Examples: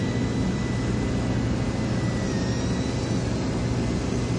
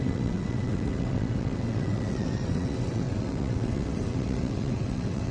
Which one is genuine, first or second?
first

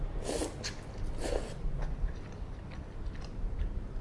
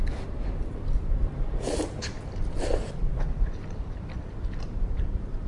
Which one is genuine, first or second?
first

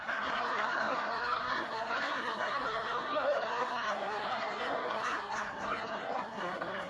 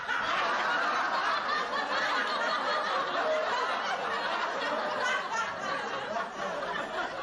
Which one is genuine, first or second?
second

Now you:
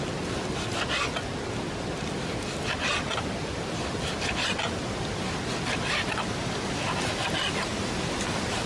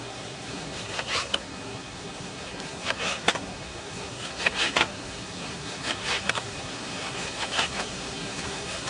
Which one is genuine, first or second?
first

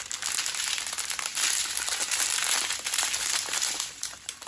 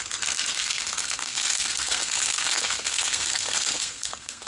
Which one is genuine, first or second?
first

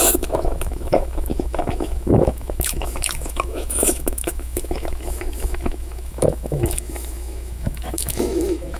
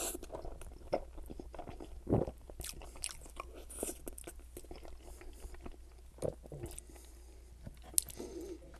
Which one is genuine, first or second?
second